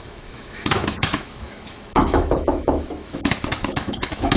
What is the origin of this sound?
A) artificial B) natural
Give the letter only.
A